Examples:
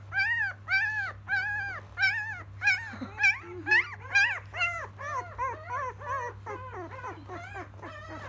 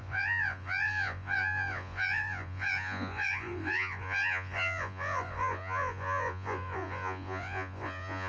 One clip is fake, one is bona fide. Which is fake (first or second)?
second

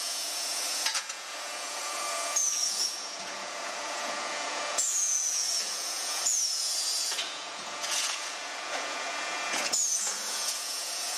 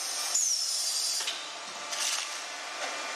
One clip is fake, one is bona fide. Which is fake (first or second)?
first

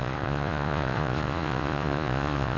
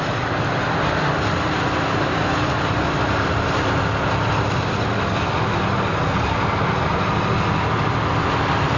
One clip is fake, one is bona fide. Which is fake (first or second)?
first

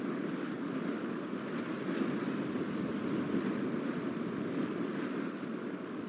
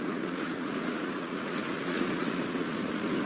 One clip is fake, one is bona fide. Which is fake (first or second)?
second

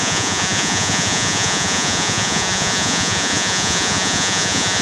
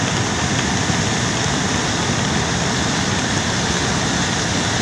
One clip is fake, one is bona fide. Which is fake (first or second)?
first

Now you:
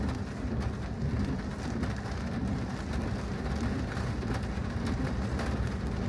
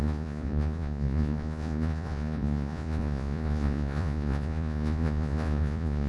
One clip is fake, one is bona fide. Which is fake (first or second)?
second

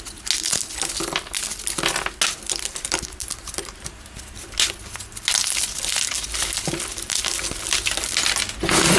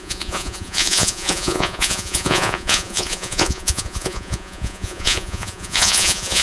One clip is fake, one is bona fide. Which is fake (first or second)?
second